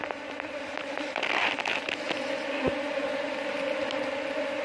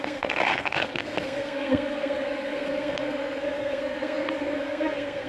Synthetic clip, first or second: second